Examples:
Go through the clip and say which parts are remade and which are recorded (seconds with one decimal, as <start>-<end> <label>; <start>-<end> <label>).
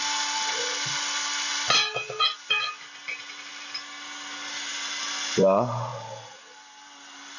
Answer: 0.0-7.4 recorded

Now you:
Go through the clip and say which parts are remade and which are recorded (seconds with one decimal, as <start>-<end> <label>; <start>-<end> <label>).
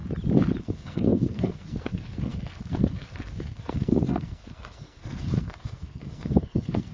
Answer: 0.0-0.6 recorded; 0.6-6.9 remade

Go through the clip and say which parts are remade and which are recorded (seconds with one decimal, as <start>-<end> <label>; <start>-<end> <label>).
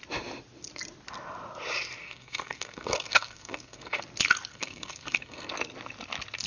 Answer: 0.0-2.0 recorded; 2.0-4.0 remade; 4.0-4.5 recorded; 4.5-5.5 remade; 5.5-6.5 recorded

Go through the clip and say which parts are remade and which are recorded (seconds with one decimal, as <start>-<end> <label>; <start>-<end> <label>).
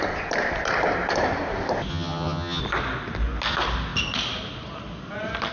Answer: 0.0-1.9 recorded; 1.9-2.6 remade; 2.6-5.5 recorded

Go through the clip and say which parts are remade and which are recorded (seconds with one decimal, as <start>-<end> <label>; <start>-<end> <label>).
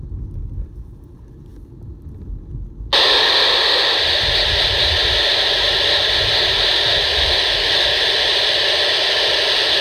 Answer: 0.0-9.8 recorded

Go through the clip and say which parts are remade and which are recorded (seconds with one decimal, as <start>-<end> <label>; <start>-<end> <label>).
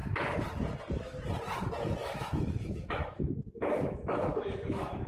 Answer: 0.0-2.0 recorded; 2.0-5.1 remade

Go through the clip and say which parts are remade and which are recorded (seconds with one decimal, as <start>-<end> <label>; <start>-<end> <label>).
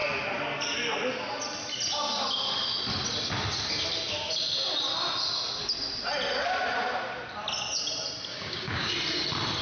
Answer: 0.0-8.3 recorded; 8.3-8.9 remade; 8.9-9.6 recorded